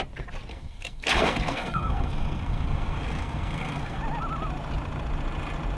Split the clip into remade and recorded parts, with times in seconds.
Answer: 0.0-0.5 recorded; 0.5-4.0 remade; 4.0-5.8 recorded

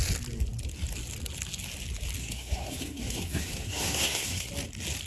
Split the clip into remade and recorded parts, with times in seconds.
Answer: 0.0-2.2 recorded; 2.2-4.5 remade; 4.5-5.1 recorded

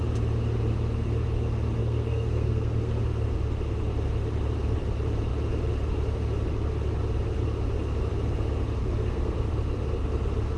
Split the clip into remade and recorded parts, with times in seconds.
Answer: 0.0-1.8 recorded; 1.8-3.0 remade; 3.0-8.8 recorded; 8.8-9.5 remade; 9.5-10.6 recorded

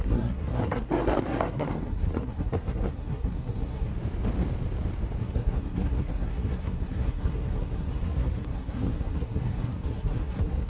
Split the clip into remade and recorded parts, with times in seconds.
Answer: 0.0-3.9 remade; 3.9-5.2 recorded; 5.2-10.7 remade

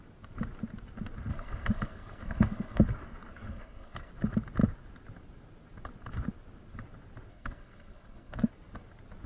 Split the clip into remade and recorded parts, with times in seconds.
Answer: 0.0-1.3 recorded; 1.3-2.8 remade; 2.8-3.3 recorded; 3.3-4.1 remade; 4.1-7.3 recorded; 7.3-8.5 remade; 8.5-9.3 recorded

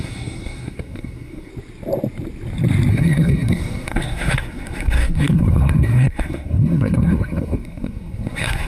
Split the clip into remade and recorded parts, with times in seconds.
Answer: 0.0-1.5 remade; 1.5-2.9 recorded; 2.9-8.7 remade

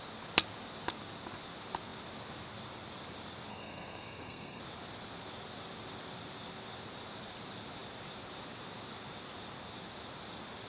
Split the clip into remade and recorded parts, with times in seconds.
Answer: 0.0-3.5 recorded; 3.5-4.6 remade; 4.6-10.7 recorded